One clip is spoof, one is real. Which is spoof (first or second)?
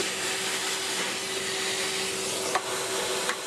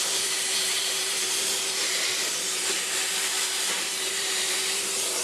second